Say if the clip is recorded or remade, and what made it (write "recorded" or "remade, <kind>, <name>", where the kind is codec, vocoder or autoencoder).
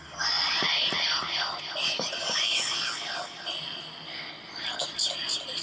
recorded